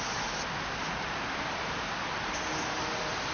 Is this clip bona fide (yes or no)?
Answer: yes